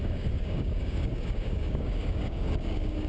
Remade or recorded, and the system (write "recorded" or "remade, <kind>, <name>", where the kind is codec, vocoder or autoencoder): remade, codec, DAC